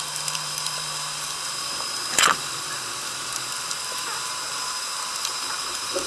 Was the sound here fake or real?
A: fake